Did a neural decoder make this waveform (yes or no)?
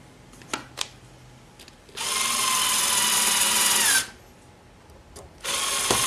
no